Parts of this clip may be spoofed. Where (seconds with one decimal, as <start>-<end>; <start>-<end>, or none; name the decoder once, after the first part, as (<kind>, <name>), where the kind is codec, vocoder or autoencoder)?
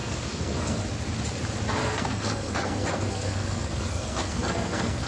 0.0-0.8 (codec, SNAC); 1.8-5.1